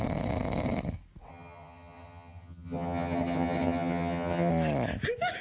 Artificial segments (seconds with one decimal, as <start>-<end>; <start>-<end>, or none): 1.3-4.5